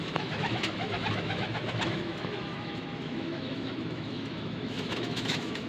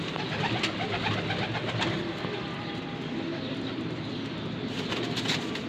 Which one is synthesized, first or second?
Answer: first